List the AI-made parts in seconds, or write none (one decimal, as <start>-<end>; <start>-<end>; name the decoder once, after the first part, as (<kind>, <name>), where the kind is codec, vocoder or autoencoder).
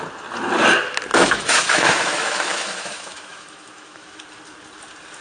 1.1-4.2 (autoencoder, DAC-VAE)